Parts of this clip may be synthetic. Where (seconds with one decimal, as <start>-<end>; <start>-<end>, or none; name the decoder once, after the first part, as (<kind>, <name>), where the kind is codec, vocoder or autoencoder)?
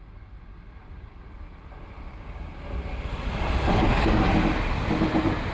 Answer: 2.1-2.6 (codec, DAC); 3.7-4.3